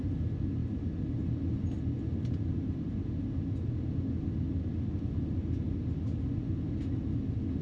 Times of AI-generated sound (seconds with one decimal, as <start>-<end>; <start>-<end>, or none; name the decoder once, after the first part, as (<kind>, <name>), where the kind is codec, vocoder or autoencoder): none